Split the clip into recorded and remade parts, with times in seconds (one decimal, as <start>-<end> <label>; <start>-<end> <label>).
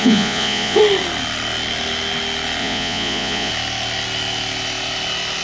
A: 0.0-0.8 remade; 0.8-2.6 recorded; 2.6-3.5 remade; 3.5-5.4 recorded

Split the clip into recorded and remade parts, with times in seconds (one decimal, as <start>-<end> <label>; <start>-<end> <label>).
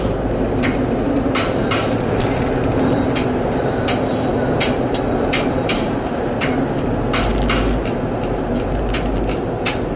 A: 0.0-10.0 recorded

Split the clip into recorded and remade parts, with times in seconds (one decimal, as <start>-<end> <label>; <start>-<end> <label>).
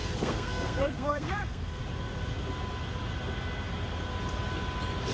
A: 0.0-1.8 remade; 1.8-5.1 recorded